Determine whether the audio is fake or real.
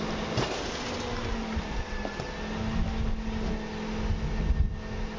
real